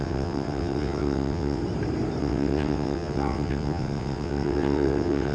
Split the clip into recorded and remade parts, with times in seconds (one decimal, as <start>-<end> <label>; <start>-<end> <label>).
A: 0.0-1.6 remade; 1.6-2.2 recorded; 2.2-5.3 remade